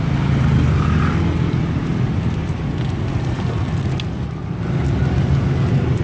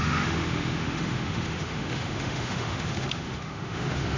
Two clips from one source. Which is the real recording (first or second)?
first